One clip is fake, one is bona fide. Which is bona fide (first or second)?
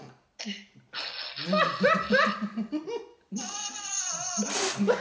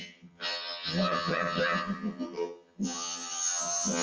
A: first